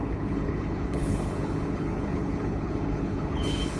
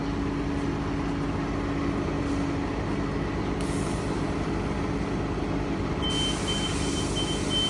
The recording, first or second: second